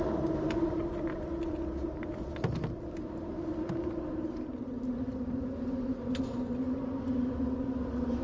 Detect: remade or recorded recorded